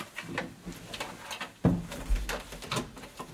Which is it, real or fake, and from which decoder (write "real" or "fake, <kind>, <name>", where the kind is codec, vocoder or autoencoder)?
real